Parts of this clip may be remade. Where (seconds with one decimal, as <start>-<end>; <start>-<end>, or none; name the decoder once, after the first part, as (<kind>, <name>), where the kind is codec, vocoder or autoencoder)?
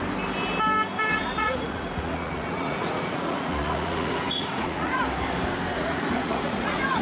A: 1.1-5.0 (vocoder, Vocos); 5.7-7.0